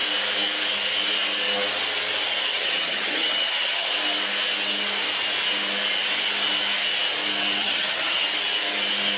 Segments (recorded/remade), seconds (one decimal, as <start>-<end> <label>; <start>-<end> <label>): 0.0-2.5 recorded; 2.5-3.9 remade; 3.9-7.6 recorded; 7.6-8.2 remade; 8.2-9.2 recorded